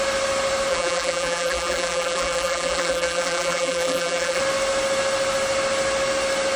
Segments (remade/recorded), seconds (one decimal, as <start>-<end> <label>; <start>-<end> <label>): 0.0-0.7 recorded; 0.7-4.4 remade; 4.4-6.6 recorded